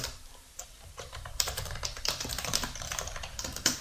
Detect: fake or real fake